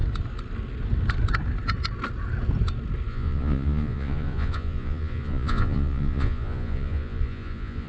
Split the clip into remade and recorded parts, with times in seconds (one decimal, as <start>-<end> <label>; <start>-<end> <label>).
0.0-3.1 recorded; 3.1-7.9 remade